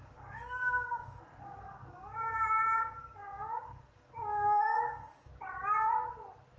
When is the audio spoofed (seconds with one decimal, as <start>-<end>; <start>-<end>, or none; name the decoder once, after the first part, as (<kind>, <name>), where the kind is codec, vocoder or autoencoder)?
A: 0.0-5.3 (codec, DAC)